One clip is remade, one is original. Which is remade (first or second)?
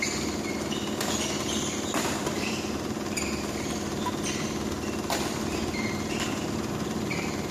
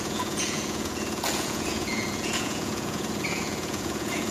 second